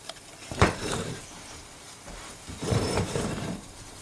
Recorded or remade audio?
remade